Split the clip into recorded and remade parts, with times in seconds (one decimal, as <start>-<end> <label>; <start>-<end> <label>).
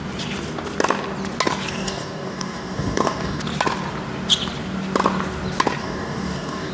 0.0-1.7 recorded; 1.7-3.4 remade; 3.4-5.8 recorded; 5.8-6.7 remade